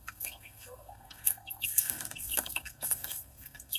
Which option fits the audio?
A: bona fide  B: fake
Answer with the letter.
B